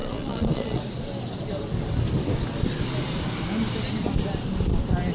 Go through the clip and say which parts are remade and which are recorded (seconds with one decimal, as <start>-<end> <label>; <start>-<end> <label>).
0.0-0.8 remade; 0.8-5.1 recorded